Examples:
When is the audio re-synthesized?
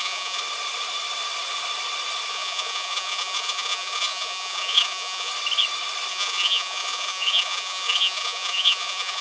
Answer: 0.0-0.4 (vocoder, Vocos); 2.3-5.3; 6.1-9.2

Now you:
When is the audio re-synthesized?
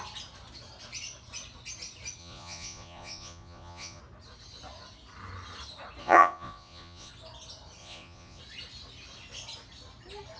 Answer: 2.2-4.0 (vocoder, Vocos); 6.0-7.1; 7.8-8.4